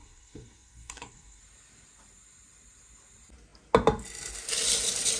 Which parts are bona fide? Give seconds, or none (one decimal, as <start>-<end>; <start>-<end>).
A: 1.4-5.2